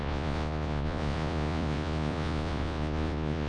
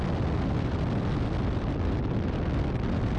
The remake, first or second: first